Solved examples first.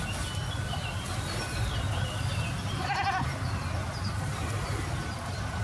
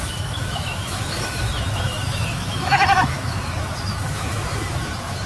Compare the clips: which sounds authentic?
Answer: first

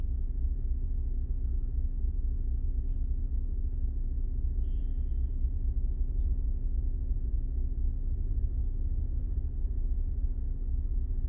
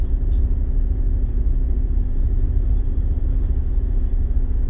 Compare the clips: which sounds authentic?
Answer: first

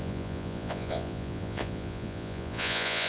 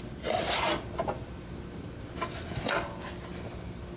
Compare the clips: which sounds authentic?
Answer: second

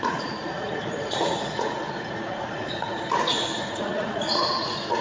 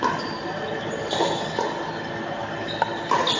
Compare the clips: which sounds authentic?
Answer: second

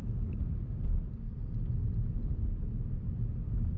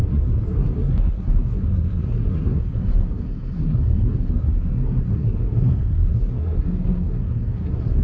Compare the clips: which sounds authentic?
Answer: first